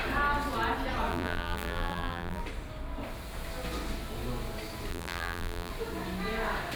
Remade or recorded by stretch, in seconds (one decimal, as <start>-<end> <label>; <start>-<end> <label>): 0.0-1.1 recorded; 1.1-2.4 remade; 2.4-4.9 recorded; 4.9-5.7 remade; 5.7-6.8 recorded